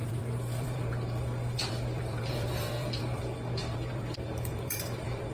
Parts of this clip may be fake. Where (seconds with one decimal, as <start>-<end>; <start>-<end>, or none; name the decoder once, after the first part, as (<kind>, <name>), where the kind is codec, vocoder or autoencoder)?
0.0-3.2 (vocoder, BigVGAN v2); 3.6-5.3